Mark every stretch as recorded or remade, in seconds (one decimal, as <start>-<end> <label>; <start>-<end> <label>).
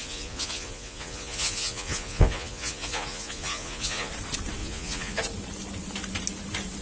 0.0-4.1 remade; 4.1-4.6 recorded; 4.6-5.2 remade; 5.2-6.8 recorded